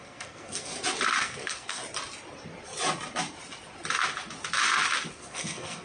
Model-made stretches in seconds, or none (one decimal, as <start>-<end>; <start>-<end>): 0.0-0.7; 1.2-1.8; 5.1-5.8